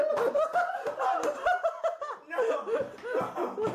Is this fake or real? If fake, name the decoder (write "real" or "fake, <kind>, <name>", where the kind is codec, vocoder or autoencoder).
real